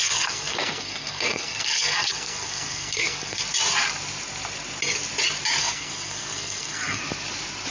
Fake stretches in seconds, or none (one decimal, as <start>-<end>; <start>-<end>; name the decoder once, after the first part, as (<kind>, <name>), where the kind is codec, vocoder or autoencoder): 0.0-3.4 (codec, SNAC); 5.6-7.0